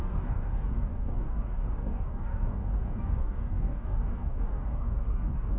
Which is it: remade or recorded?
remade